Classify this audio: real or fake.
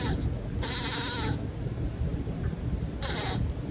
real